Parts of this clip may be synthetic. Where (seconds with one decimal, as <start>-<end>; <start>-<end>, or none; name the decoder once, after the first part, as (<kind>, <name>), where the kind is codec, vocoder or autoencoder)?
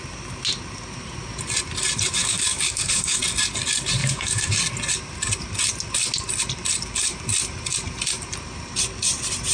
2.2-3.2 (codec, DAC); 4.0-4.5